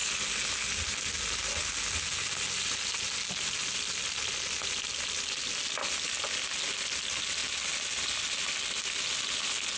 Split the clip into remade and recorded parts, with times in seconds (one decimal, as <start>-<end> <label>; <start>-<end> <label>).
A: 0.0-9.8 recorded